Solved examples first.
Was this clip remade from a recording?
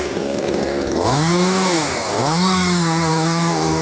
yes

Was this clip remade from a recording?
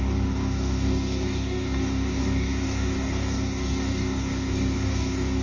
yes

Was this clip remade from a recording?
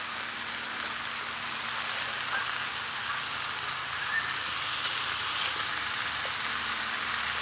no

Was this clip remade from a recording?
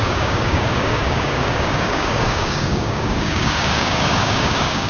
yes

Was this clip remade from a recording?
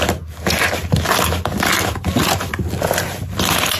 no